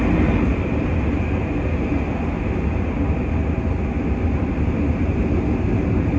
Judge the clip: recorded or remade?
recorded